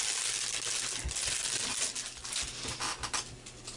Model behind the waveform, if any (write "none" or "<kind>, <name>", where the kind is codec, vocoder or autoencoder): none